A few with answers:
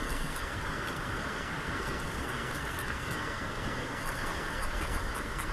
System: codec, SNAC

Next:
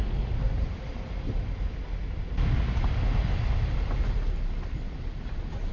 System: none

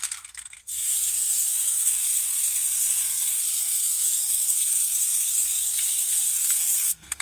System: codec, SNAC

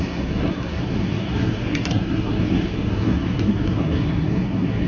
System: codec, SNAC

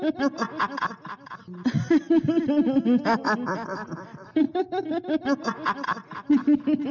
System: none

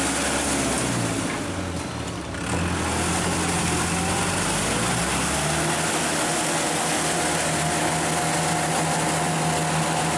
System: none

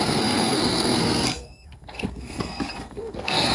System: codec, SNAC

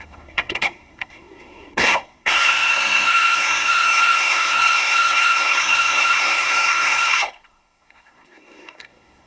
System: codec, SNAC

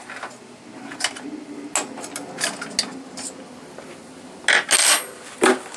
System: none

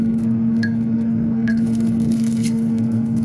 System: codec, SNAC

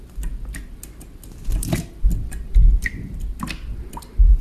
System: none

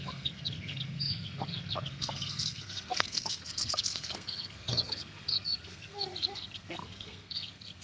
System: codec, SNAC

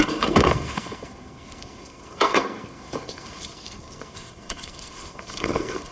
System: codec, SNAC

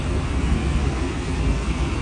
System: codec, SNAC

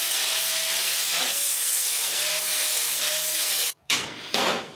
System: codec, SNAC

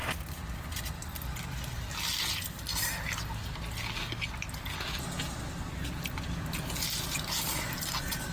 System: none